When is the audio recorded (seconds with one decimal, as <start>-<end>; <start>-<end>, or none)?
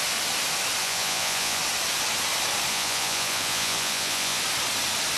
0.0-0.8; 1.6-2.7; 4.4-5.2